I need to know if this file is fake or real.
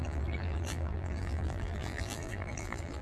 fake